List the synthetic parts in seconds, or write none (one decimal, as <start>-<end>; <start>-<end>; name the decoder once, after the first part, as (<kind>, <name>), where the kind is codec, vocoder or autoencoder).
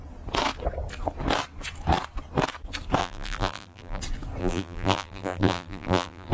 3.0-4.0 (vocoder, BigVGAN v2); 4.4-6.3